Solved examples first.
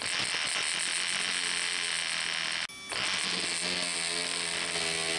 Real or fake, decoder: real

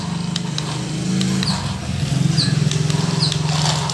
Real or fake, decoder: real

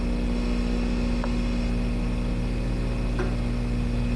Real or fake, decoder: real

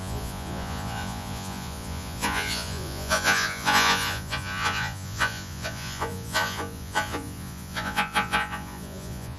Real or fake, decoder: fake, vocoder, Vocos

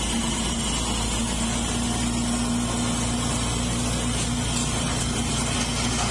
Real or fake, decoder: real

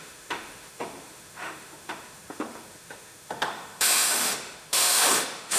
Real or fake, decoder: fake, autoencoder, DAC-VAE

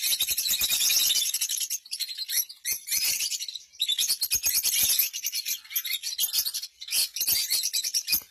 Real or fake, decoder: real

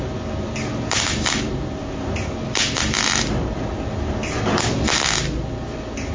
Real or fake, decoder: real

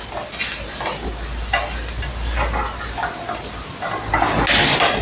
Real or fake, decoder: real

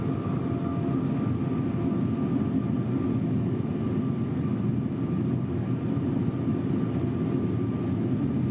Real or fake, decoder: real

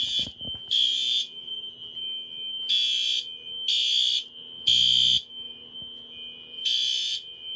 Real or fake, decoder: real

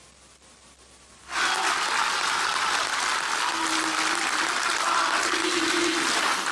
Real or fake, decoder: real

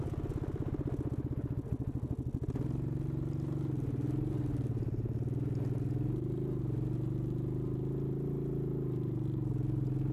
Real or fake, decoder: real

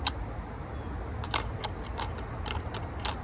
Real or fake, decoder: real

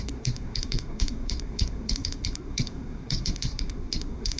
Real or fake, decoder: fake, codec, SNAC